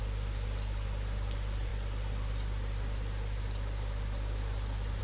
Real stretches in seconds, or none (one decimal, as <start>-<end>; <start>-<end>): 0.0-5.0